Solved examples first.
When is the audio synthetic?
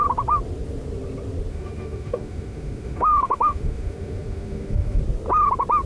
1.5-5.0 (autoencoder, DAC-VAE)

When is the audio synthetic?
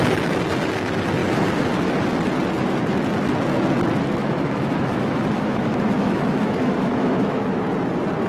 4.2-7.6 (autoencoder, DAC-VAE)